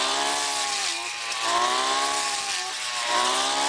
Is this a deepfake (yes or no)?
no